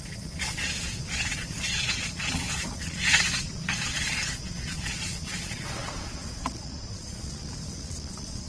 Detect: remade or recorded remade